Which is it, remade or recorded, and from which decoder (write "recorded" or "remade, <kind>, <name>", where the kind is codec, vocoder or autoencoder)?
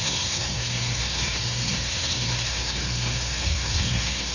remade, codec, SNAC